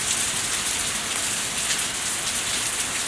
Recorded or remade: recorded